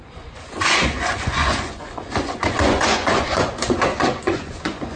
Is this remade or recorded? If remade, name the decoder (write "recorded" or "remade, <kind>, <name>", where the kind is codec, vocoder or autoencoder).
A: remade, vocoder, Vocos